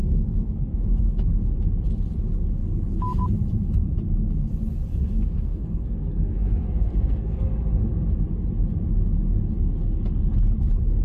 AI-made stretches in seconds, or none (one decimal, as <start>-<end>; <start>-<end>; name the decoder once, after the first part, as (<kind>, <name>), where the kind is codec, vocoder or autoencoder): 0.0-1.0 (codec, SNAC); 4.9-7.6